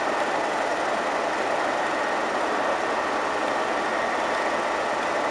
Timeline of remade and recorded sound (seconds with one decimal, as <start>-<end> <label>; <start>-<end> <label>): 0.0-5.3 recorded